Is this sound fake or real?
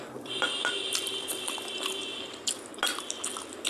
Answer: real